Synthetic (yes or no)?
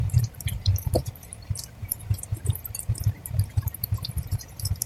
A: yes